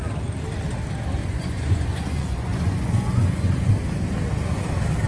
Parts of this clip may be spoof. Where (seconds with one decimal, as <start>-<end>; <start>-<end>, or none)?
1.2-3.7